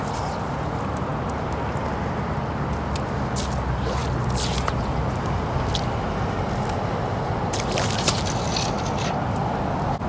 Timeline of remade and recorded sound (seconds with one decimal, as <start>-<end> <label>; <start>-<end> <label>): 0.0-10.1 recorded